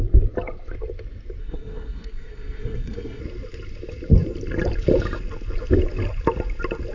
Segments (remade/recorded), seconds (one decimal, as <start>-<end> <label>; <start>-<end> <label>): 0.0-1.4 recorded; 1.4-3.2 remade; 3.2-6.9 recorded